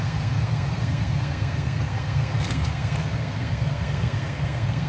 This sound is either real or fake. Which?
fake